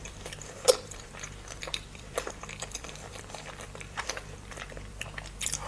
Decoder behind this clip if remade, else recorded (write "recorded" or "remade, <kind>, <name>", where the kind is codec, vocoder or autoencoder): remade, vocoder, BigVGAN v2